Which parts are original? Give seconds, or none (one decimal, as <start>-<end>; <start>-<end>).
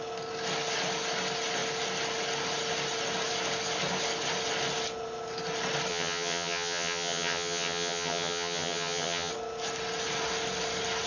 0.0-5.9; 9.3-11.1